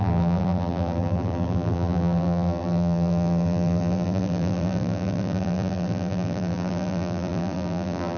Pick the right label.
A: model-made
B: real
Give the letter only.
A